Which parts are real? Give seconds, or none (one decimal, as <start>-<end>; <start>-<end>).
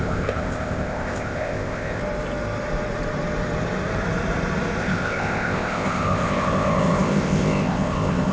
2.0-4.8